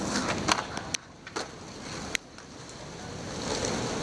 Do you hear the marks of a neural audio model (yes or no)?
no